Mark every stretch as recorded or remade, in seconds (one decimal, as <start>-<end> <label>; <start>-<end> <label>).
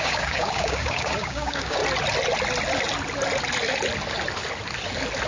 0.0-1.8 remade; 1.8-5.3 recorded